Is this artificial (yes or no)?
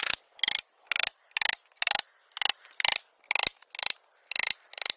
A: no